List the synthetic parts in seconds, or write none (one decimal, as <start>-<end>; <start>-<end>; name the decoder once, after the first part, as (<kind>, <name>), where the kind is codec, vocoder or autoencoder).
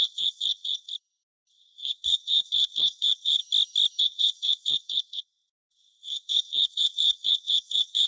0.0-0.9 (codec, SNAC); 1.5-3.4; 4.0-8.1